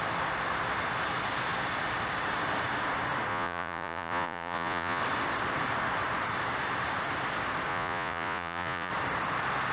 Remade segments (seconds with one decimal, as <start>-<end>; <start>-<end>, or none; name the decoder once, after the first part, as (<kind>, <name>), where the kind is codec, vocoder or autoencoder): 3.3-5.0 (vocoder, Vocos); 7.7-8.9